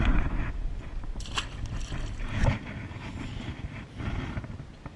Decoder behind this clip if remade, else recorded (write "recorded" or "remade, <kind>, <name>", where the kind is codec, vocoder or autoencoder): recorded